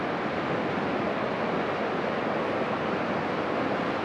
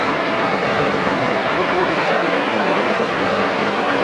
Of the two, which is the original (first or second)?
first